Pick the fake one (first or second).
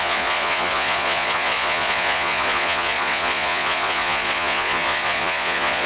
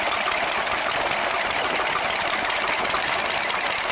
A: first